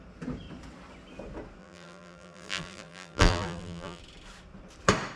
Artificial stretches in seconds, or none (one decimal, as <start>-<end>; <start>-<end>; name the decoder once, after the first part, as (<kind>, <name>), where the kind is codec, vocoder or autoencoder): 1.6-4.0 (vocoder, BigVGAN v2)